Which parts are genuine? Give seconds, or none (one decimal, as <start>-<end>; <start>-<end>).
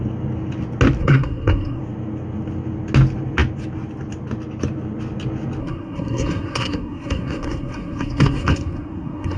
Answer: 0.0-1.0; 1.8-5.6